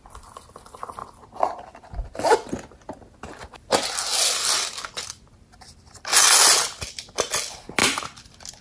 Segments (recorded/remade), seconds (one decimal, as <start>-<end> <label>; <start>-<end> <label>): 0.0-8.6 recorded